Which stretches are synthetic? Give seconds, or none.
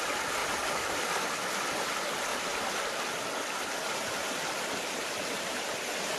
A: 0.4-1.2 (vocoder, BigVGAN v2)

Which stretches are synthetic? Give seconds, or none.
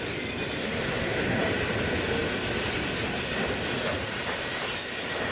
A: 0.6-1.4 (codec, SNAC)